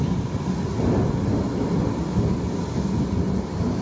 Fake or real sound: real